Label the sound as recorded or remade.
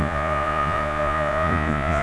remade